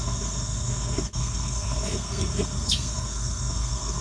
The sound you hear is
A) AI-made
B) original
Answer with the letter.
A